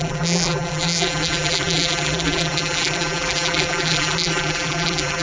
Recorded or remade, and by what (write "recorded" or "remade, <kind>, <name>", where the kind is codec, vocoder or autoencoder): remade, vocoder, BigVGAN v2